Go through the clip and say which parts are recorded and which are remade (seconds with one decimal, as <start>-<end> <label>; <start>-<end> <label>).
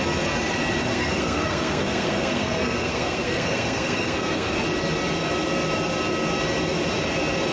0.0-0.9 recorded; 0.9-4.5 remade; 4.5-7.5 recorded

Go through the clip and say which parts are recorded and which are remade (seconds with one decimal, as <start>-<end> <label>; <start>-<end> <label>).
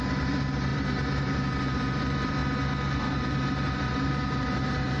0.0-2.4 remade; 2.4-2.9 recorded; 2.9-5.0 remade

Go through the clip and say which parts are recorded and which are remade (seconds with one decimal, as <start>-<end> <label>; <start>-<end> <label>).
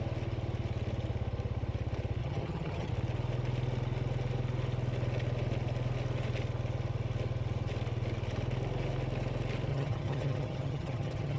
0.0-2.2 recorded; 2.2-2.9 remade; 2.9-9.7 recorded; 9.7-11.4 remade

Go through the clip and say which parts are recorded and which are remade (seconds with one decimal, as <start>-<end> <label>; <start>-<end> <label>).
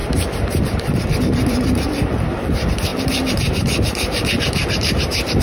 0.0-5.4 remade